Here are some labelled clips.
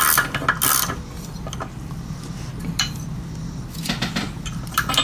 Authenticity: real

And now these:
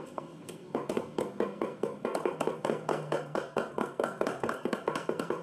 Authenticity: fake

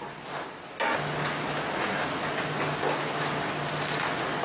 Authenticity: real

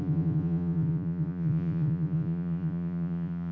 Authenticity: fake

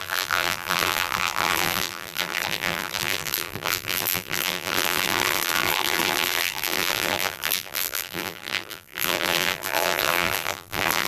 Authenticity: fake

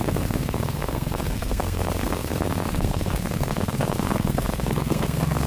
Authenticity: fake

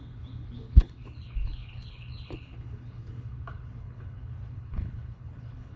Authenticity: fake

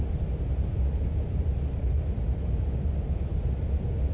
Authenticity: real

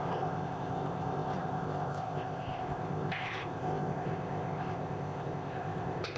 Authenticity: fake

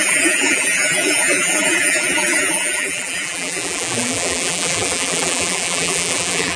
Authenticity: fake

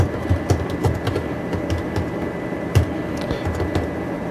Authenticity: real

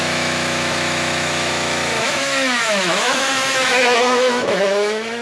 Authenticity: fake